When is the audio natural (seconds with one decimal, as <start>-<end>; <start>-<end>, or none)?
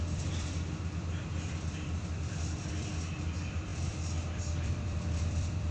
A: none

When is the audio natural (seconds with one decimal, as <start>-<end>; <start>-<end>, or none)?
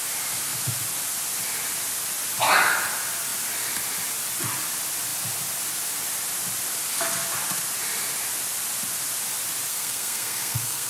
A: 0.0-9.7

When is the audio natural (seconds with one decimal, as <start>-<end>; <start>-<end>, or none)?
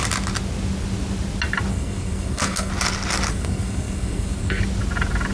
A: 0.0-1.7; 2.7-3.3; 4.6-5.3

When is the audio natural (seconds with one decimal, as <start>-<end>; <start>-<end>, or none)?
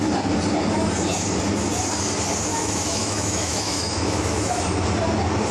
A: 0.0-2.5; 4.6-5.5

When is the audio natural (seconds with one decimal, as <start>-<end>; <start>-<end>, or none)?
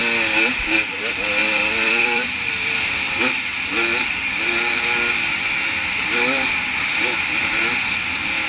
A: 0.0-1.4; 3.2-8.5